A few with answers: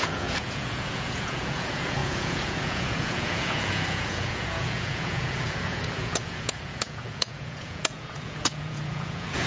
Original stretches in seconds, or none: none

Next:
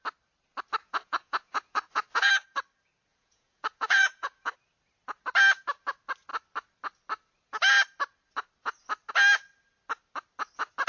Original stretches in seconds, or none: 0.0-0.8; 2.3-3.1; 4.5-10.9

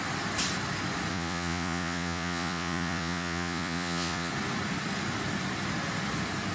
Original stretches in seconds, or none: 0.0-1.1; 4.3-6.5

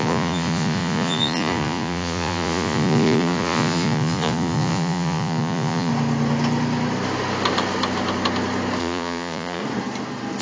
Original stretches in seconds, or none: 5.9-8.8; 9.6-10.4

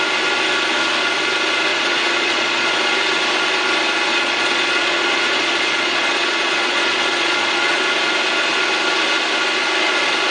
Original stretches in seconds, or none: 0.0-1.7; 2.7-4.1; 7.8-10.3

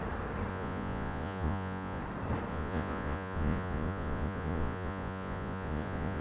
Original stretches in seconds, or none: 0.0-0.5; 2.0-2.5